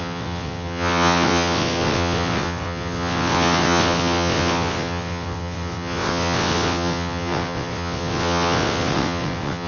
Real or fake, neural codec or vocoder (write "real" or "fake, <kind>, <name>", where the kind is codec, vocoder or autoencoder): fake, vocoder, WaveNeXt